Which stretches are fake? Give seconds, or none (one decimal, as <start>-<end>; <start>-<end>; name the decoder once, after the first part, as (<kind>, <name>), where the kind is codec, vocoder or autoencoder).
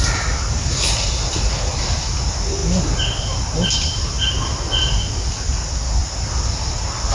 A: none